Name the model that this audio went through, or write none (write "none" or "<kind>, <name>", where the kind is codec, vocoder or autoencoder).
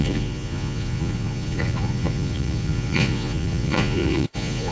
vocoder, Vocos